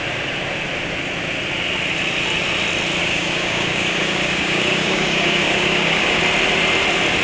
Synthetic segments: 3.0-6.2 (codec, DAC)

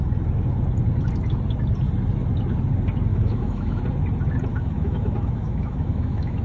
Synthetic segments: 3.1-3.8 (autoencoder, DAC-VAE); 4.5-6.4

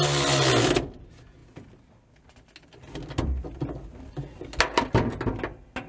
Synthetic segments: none